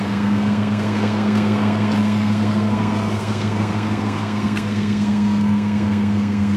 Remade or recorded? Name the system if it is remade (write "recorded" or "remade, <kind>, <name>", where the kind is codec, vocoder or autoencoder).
remade, codec, SNAC